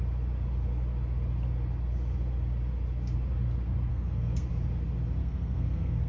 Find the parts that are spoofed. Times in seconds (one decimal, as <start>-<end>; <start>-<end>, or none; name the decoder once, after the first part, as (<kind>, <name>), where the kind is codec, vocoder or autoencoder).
3.9-4.5 (codec, SNAC); 5.2-6.1